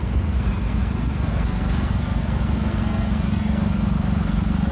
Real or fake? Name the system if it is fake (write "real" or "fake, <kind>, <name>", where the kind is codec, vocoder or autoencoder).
fake, codec, SNAC